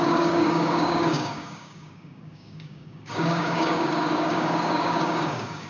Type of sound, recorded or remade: remade